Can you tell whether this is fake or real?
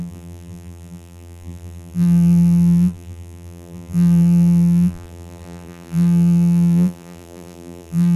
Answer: fake